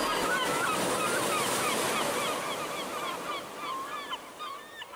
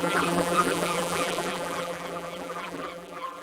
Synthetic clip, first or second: second